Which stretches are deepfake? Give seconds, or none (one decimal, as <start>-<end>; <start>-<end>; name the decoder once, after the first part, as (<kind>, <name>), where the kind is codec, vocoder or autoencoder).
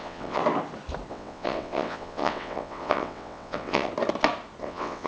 0.0-0.4 (vocoder, WaveNeXt); 1.1-3.9; 4.6-5.1